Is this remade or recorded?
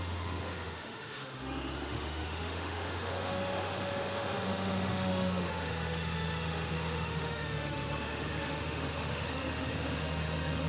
remade